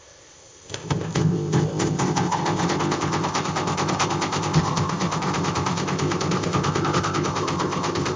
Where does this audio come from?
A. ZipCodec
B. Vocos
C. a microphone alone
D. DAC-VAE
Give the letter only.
A